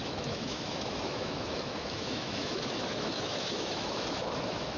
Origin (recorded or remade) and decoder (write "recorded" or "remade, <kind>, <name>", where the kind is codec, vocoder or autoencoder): remade, autoencoder, DAC-VAE